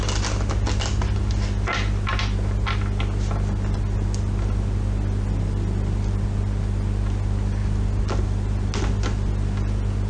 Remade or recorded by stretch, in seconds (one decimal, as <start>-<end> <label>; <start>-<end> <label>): 0.0-10.1 recorded